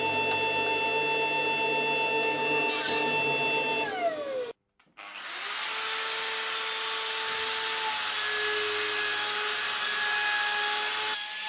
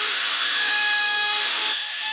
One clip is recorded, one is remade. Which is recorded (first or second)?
first